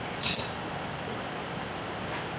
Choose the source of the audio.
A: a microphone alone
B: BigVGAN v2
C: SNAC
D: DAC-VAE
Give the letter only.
A